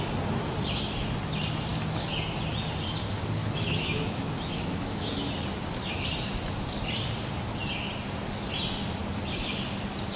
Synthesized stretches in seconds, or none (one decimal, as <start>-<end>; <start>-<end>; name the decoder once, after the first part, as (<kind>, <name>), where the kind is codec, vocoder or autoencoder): 3.4-5.3 (autoencoder, DAC-VAE)